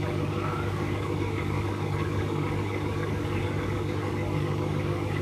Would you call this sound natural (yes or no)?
no